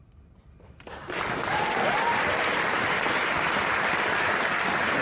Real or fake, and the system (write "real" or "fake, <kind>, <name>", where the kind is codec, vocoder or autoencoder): real